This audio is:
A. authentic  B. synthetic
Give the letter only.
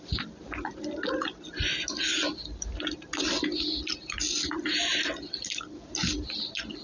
A